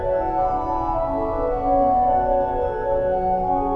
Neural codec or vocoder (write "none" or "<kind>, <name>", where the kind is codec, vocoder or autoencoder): none